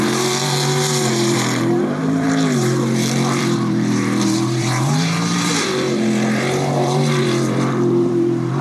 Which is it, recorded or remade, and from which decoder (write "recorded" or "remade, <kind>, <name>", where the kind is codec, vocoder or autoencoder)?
remade, vocoder, BigVGAN v2